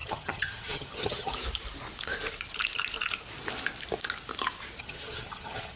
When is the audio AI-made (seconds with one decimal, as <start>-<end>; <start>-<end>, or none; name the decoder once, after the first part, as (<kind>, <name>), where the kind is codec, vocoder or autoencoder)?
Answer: 0.0-1.3 (vocoder, HiFi-GAN); 4.8-5.8